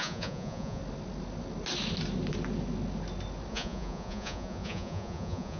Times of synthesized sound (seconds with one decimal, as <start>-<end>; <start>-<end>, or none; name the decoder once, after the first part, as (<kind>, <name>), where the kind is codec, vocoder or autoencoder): 0.0-0.8 (vocoder, Vocos); 3.5-5.6